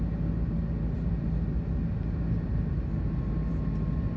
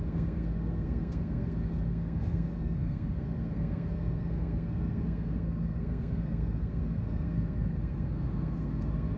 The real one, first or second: first